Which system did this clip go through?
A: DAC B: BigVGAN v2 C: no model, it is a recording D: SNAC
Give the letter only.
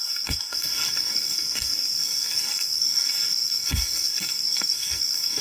D